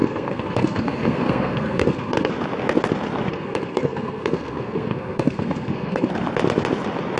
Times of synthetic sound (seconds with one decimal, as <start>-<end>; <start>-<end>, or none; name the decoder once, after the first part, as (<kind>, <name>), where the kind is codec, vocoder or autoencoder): 0.0-2.3 (codec, SNAC); 3.3-6.1